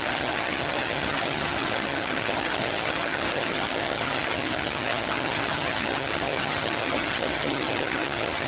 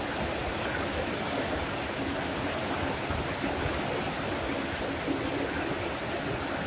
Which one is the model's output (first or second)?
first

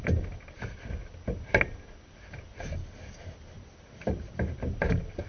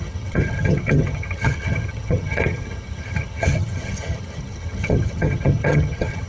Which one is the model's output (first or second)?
second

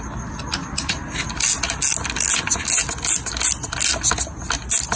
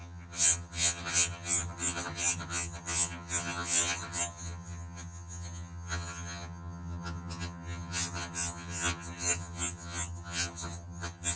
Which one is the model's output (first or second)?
second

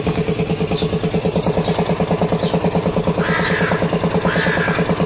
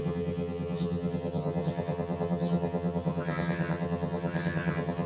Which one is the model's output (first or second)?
second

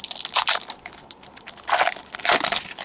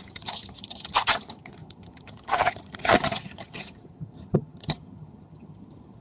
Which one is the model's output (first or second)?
second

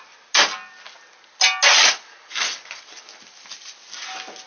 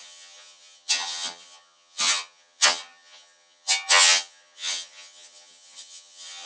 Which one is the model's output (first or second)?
second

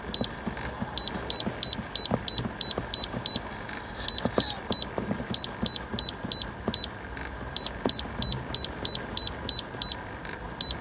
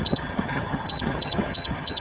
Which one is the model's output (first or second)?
second